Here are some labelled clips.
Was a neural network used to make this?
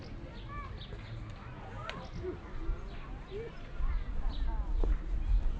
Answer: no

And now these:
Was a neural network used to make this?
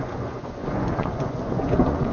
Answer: yes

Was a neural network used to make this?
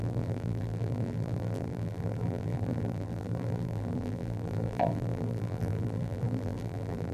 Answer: yes